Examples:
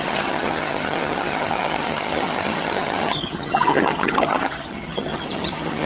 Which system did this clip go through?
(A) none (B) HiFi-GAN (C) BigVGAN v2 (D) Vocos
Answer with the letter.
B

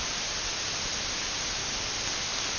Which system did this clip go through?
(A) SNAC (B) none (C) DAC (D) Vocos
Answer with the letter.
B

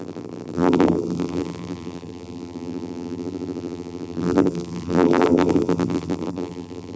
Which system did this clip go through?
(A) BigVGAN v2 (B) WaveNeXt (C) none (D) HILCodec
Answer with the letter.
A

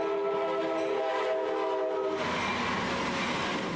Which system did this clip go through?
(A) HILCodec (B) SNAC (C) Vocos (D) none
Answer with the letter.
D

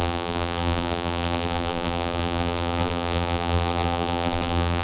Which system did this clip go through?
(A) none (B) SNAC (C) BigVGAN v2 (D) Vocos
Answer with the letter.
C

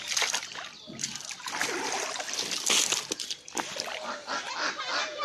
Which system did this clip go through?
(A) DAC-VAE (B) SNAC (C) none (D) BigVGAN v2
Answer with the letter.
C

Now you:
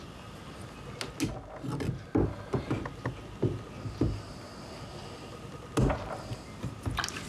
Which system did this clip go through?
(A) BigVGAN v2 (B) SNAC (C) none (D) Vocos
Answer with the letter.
C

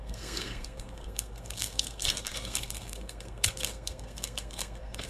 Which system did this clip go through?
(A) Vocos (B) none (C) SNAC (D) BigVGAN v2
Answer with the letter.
C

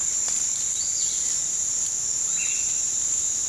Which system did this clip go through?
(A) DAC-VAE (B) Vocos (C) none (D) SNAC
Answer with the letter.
C